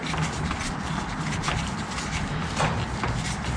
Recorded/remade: recorded